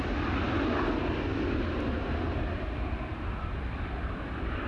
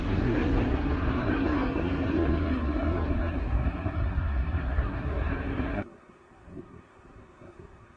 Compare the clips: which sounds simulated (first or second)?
second